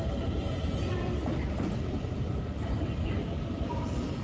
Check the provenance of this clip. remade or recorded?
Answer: remade